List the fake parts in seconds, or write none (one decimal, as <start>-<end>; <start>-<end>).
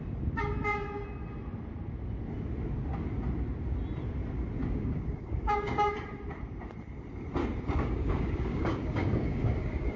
4.6-5.9; 7.4-10.0